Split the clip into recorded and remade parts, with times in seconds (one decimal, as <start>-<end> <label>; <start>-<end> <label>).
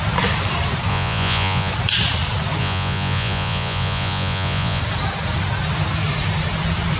0.0-0.9 recorded; 0.9-1.7 remade; 1.7-2.6 recorded; 2.6-4.8 remade; 4.8-7.0 recorded